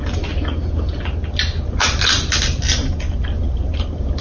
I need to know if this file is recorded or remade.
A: recorded